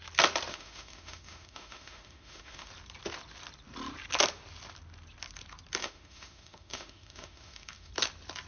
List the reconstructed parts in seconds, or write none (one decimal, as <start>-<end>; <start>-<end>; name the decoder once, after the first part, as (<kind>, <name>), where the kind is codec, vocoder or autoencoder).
0.5-2.7 (autoencoder, DAC-VAE); 5.8-7.9